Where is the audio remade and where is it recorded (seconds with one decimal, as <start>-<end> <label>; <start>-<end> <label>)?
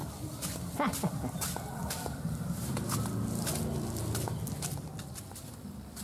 0.0-6.0 recorded